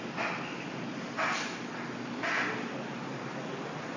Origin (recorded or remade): recorded